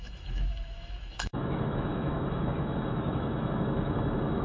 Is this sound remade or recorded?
remade